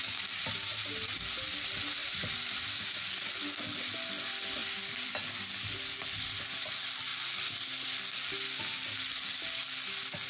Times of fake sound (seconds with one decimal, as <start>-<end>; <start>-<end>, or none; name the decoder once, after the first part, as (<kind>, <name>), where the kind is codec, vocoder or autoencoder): 2.0-2.9 (vocoder, BigVGAN v2); 4.6-5.1